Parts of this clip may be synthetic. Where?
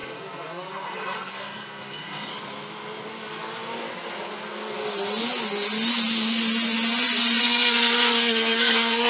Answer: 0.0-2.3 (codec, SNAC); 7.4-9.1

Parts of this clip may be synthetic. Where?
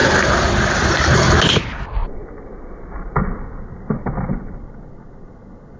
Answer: 0.0-1.4 (vocoder, BigVGAN v2)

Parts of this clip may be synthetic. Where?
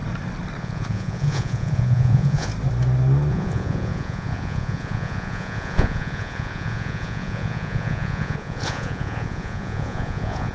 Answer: 0.6-2.5 (vocoder, Vocos); 3.3-10.5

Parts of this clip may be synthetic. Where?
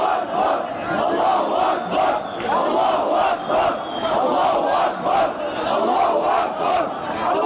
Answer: 6.4-6.9 (vocoder, Vocos)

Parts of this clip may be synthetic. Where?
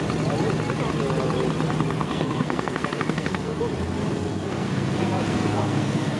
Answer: 2.0-3.6 (codec, SNAC); 4.0-6.2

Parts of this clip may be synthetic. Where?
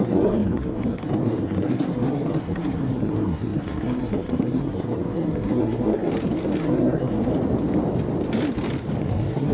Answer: 0.0-6.1 (codec, SNAC); 6.6-7.3; 9.0-9.5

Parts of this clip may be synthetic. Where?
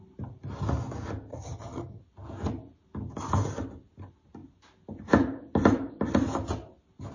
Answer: 1.3-2.0 (vocoder, HiFi-GAN)